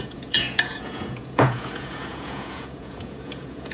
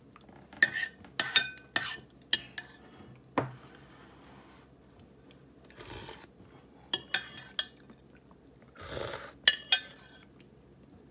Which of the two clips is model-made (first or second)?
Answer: first